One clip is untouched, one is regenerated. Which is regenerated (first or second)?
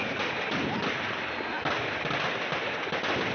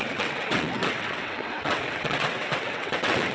second